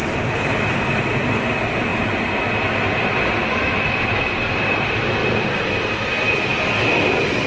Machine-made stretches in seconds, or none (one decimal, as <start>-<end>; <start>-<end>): none